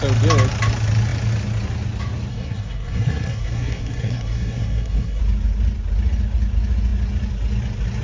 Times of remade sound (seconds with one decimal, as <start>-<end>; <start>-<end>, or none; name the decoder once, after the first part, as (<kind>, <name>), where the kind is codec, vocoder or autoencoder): 2.3-5.2 (codec, SNAC)